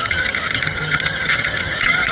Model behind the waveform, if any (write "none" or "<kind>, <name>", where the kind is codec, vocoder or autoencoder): vocoder, HiFi-GAN